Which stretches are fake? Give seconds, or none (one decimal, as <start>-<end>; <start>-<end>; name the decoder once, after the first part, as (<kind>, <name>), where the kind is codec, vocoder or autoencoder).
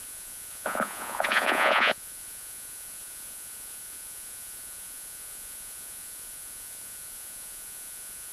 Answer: 0.0-8.3 (vocoder, Vocos)